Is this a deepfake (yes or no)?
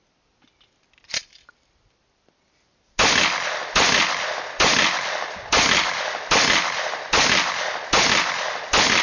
no